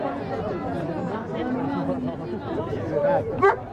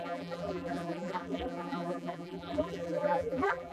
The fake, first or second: second